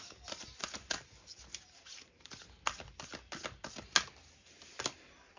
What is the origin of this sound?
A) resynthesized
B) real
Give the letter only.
B